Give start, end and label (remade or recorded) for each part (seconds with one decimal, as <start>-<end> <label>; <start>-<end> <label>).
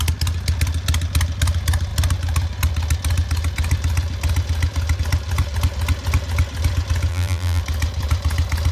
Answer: 0.0-7.1 recorded; 7.1-7.6 remade; 7.6-8.7 recorded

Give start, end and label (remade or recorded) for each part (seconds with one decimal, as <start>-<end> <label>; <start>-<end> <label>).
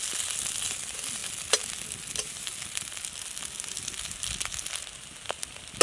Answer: 0.0-5.8 recorded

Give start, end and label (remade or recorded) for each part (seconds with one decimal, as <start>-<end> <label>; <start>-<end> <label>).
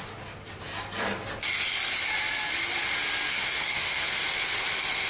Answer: 0.0-3.3 recorded; 3.3-4.1 remade; 4.1-5.1 recorded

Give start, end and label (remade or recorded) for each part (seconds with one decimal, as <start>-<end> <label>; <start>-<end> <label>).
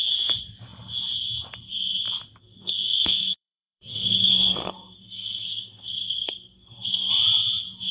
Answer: 0.0-2.4 recorded; 2.4-7.1 remade; 7.1-7.9 recorded